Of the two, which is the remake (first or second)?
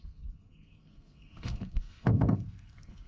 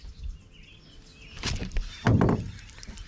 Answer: first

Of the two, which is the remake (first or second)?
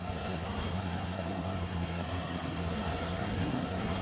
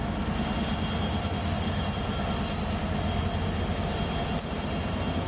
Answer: first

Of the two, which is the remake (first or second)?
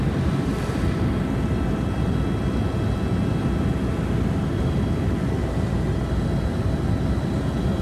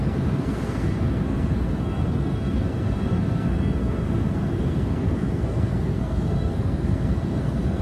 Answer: second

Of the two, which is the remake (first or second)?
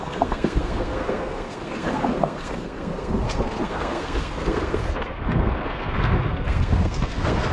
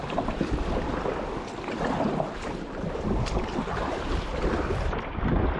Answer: first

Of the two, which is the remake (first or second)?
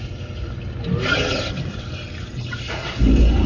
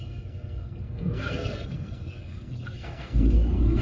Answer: second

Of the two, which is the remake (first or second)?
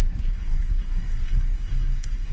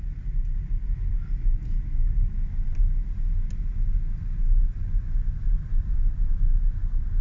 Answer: first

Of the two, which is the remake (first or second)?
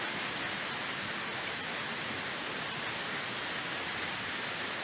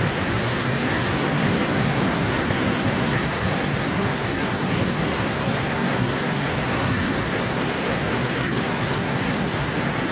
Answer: second